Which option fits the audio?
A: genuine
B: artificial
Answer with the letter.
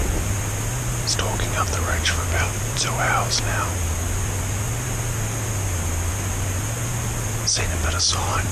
A